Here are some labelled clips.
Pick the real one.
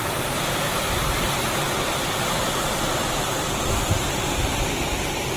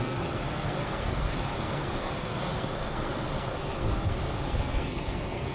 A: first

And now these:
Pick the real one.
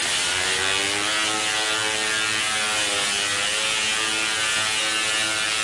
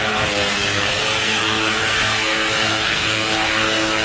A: first